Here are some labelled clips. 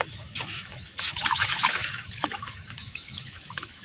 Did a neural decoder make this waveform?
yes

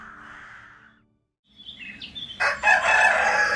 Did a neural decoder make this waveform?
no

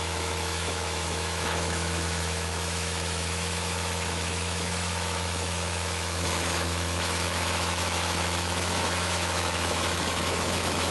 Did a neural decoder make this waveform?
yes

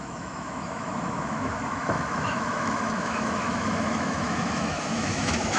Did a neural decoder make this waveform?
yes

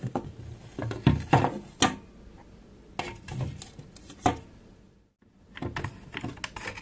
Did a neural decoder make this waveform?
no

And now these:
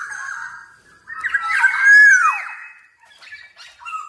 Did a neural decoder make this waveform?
no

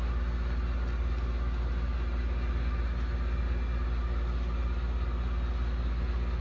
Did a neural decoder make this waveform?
no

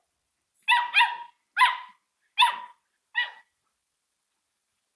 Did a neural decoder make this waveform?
no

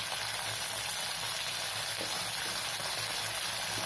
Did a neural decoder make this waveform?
no